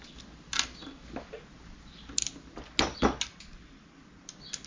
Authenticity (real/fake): real